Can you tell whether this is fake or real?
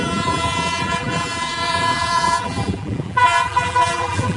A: fake